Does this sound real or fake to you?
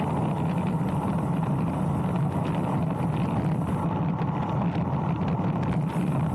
real